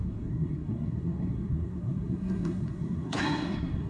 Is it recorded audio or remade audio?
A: remade